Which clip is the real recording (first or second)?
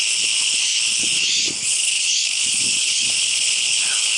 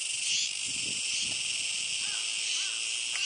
second